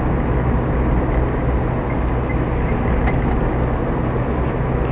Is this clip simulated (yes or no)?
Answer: no